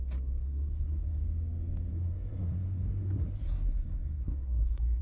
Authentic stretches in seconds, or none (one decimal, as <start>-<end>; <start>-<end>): 0.0-0.4; 1.2-1.9